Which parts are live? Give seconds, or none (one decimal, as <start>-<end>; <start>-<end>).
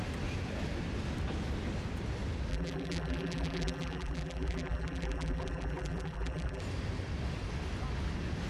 0.0-2.5; 6.6-8.5